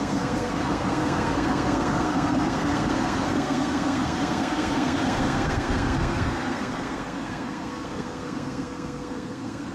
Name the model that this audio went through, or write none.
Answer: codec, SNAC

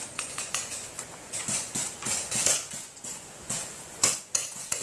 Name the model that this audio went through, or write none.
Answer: vocoder, Vocos